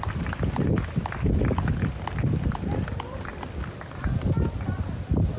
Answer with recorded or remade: recorded